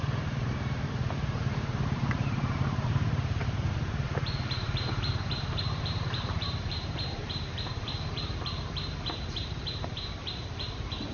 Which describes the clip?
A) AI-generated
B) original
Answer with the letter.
A